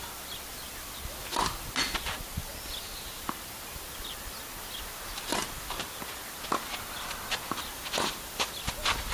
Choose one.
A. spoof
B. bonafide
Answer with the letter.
B